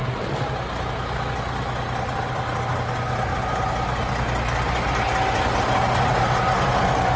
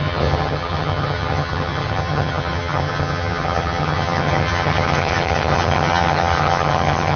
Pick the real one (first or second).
first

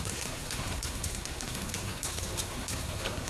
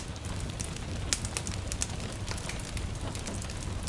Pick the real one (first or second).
second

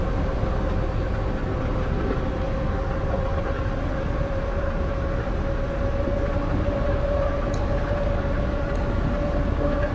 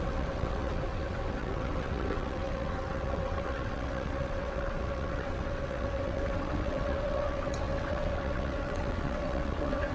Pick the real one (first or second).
first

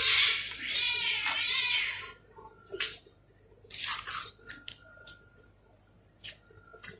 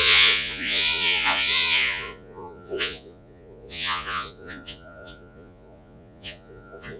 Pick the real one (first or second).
first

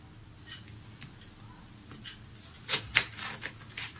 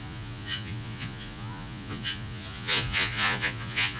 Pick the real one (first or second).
first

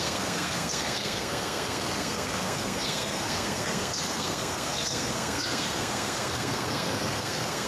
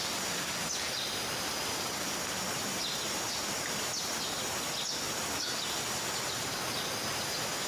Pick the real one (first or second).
second